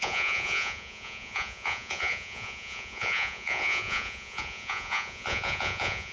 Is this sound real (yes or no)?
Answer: no